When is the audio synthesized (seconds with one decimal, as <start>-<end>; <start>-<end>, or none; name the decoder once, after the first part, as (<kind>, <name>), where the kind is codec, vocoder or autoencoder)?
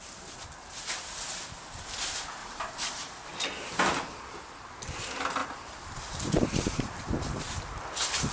2.4-3.4 (vocoder, BigVGAN v2); 5.4-7.8